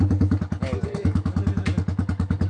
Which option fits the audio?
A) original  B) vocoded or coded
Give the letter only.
B